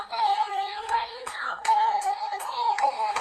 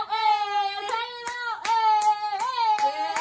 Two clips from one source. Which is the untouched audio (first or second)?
second